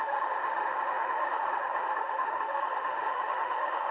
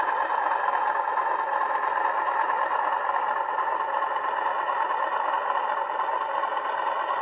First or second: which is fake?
first